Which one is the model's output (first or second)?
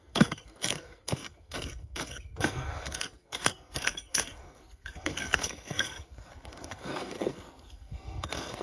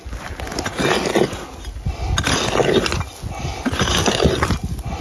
first